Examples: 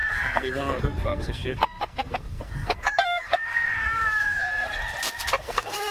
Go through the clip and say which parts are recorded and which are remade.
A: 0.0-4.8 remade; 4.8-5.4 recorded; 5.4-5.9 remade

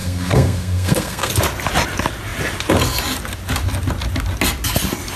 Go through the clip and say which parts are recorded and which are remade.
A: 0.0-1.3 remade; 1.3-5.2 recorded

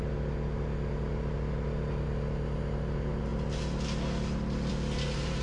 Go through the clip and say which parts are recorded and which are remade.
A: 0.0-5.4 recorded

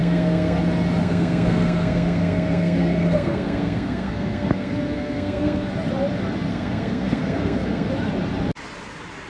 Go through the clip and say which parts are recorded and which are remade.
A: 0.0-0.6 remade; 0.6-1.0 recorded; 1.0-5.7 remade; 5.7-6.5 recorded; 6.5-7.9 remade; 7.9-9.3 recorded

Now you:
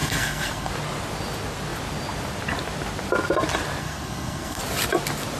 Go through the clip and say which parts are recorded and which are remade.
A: 0.0-0.7 remade; 0.7-3.8 recorded; 3.8-4.6 remade; 4.6-5.4 recorded

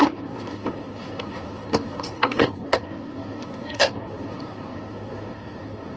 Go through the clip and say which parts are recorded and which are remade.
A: 0.0-6.0 remade

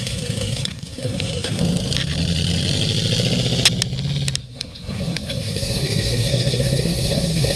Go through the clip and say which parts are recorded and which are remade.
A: 0.0-1.6 remade; 1.6-4.4 recorded; 4.4-7.6 remade

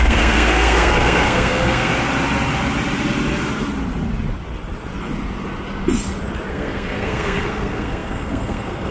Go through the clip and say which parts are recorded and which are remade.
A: 0.0-1.9 remade; 1.9-6.5 recorded; 6.5-8.9 remade